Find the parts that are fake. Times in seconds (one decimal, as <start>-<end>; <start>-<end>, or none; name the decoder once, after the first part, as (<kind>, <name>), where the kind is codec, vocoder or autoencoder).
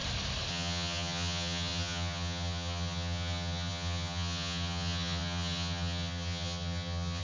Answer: 0.5-7.2 (vocoder, HiFi-GAN)